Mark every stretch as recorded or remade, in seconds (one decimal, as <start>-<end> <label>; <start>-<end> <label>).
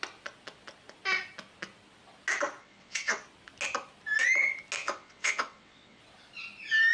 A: 0.0-2.6 recorded; 2.6-3.2 remade; 3.2-4.8 recorded; 4.8-6.0 remade; 6.0-6.9 recorded